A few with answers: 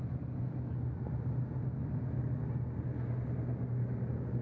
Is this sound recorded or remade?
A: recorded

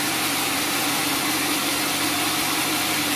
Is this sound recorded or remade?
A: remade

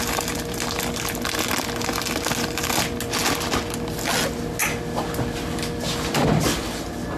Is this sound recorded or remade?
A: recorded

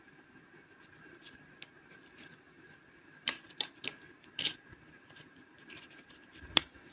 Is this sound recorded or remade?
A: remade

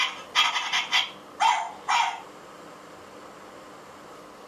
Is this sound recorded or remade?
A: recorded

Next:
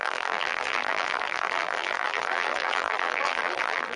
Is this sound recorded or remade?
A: remade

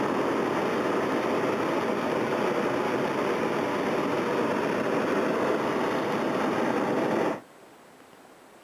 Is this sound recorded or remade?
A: recorded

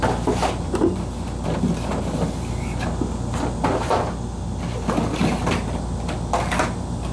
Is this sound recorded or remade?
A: recorded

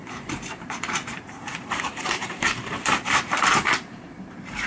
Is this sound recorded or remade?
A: remade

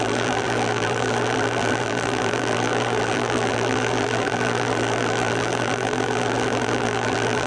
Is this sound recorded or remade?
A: remade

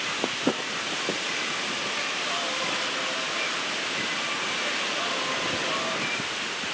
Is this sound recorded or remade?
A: recorded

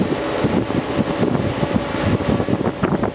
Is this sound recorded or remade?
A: remade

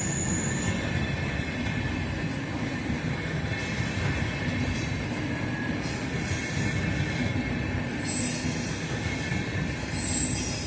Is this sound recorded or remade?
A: recorded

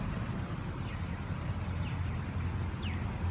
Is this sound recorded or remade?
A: recorded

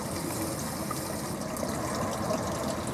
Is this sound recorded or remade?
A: recorded